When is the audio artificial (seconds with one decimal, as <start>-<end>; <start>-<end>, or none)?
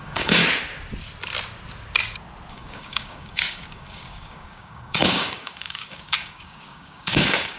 0.0-0.4; 2.5-7.6